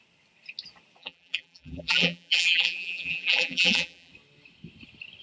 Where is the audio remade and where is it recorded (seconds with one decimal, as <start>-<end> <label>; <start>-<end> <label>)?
0.0-1.0 recorded; 1.0-4.1 remade; 4.1-5.2 recorded